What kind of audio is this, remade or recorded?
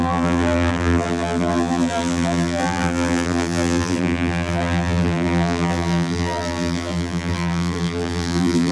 remade